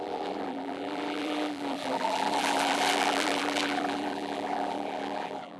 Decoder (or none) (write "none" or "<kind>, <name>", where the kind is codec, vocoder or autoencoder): vocoder, BigVGAN v2